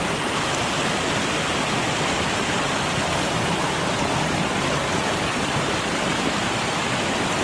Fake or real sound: real